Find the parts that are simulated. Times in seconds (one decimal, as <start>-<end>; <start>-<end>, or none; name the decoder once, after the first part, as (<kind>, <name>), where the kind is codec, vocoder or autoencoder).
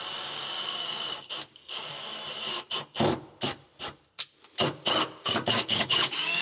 0.0-2.1 (codec, DAC); 5.2-6.4